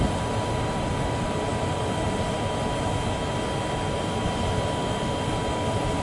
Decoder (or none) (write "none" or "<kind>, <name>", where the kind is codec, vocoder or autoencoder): none